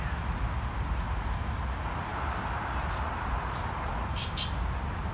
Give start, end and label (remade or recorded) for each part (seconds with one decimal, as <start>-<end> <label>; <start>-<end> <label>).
0.0-5.1 recorded